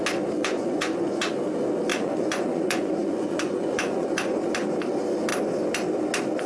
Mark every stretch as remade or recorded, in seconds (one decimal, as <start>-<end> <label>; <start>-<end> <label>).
0.0-0.4 recorded; 0.4-1.3 remade; 1.3-1.9 recorded; 1.9-4.5 remade; 4.5-6.5 recorded